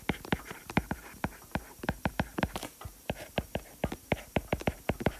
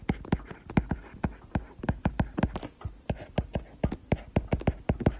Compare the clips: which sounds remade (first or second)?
first